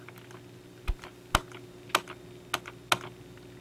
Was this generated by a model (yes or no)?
no